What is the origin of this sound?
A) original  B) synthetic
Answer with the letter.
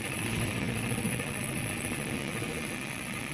B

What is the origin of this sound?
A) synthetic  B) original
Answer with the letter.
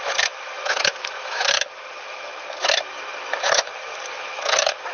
A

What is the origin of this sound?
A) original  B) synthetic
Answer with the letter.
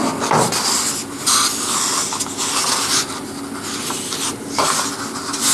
A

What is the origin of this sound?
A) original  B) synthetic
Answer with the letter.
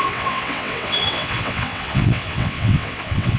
B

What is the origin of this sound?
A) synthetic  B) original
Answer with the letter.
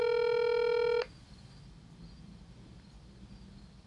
B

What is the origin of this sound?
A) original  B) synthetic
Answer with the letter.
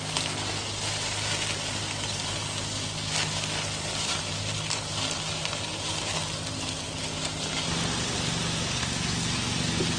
A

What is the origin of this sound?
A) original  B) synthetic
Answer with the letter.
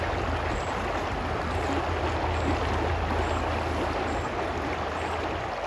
A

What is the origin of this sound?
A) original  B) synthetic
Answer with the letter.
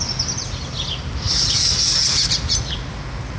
A